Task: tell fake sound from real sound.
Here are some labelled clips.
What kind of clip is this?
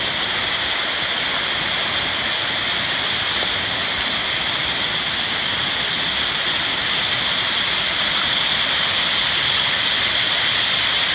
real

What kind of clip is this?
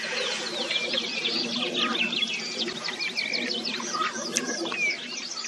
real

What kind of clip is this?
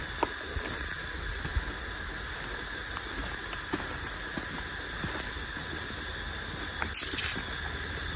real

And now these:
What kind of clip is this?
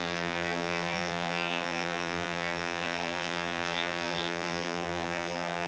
fake